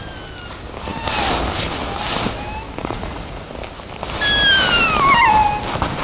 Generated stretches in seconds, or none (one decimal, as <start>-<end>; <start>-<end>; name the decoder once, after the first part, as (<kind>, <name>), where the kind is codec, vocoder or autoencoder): 2.8-3.5 (vocoder, Vocos)